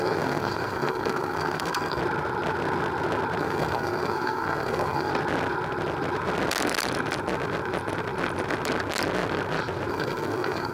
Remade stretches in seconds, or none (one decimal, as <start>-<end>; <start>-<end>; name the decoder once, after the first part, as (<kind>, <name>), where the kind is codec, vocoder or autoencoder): 0.0-2.0 (codec, SNAC); 3.4-5.1; 9.9-10.7